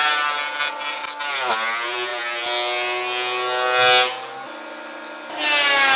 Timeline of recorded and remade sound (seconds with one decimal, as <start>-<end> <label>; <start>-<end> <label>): 0.0-6.0 recorded